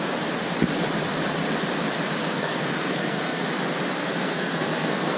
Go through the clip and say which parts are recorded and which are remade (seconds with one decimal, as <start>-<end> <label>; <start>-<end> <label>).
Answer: 0.0-2.2 recorded; 2.2-3.4 remade; 3.4-4.0 recorded; 4.0-5.2 remade

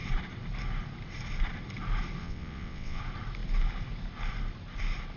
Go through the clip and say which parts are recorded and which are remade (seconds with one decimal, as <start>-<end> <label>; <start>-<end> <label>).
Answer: 0.0-2.2 recorded; 2.2-3.0 remade; 3.0-5.2 recorded

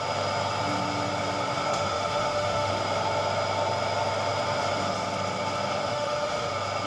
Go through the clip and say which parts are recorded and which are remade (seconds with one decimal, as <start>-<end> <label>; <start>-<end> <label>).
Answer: 0.0-1.7 recorded; 1.7-2.7 remade; 2.7-5.9 recorded; 5.9-6.5 remade; 6.5-6.9 recorded

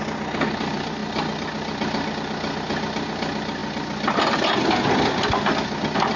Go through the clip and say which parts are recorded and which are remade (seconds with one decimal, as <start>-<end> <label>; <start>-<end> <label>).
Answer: 0.0-6.2 recorded

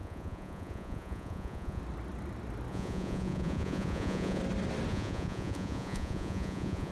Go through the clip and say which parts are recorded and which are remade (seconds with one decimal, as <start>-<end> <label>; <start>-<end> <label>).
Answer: 0.0-1.8 remade; 1.8-2.7 recorded; 2.7-4.4 remade; 4.4-4.9 recorded; 4.9-6.9 remade

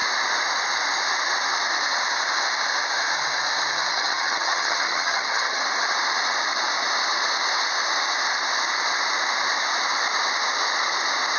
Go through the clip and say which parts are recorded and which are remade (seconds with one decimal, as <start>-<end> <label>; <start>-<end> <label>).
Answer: 0.0-3.9 recorded; 3.9-5.6 remade; 5.6-11.4 recorded

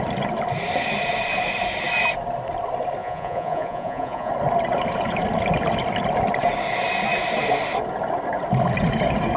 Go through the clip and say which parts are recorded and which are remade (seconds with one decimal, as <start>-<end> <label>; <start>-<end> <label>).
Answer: 0.0-3.0 recorded; 3.0-4.3 remade; 4.3-9.4 recorded